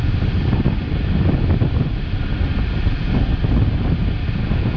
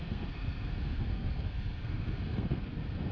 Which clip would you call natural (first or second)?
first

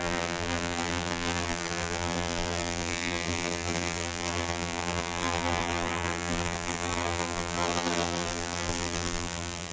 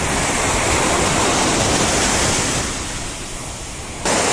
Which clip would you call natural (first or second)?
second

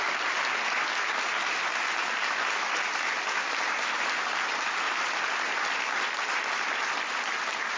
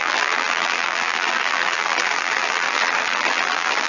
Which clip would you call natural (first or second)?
first